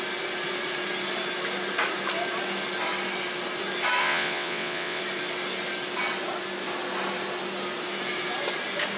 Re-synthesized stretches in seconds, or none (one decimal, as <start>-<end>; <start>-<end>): 4.0-5.0